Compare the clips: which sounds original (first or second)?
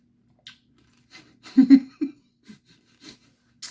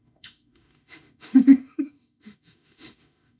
first